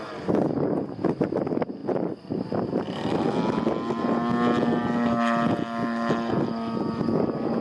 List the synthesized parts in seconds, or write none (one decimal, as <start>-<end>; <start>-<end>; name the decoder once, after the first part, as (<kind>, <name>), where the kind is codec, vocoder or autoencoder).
none